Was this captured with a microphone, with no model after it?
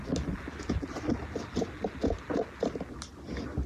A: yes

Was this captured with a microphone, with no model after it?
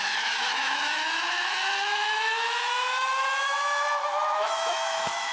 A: no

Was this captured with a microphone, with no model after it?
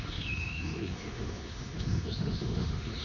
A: no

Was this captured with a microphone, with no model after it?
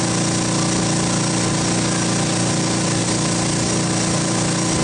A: yes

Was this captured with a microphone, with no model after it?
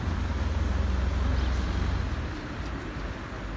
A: yes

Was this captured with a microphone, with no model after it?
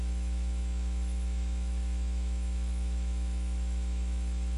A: no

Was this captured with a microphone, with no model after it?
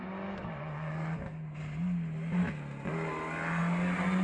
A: yes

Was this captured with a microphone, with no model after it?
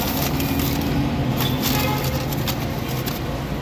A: yes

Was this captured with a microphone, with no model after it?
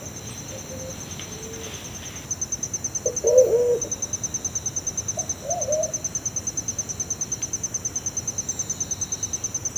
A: yes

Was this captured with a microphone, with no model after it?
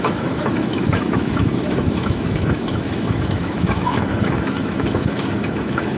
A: no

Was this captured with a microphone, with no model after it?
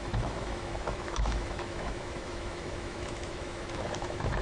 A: no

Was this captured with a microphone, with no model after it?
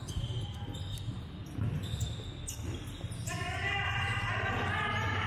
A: yes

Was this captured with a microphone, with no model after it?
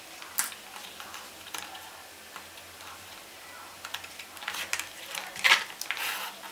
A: yes